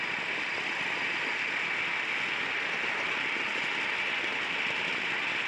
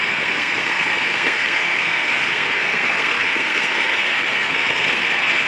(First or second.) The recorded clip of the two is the first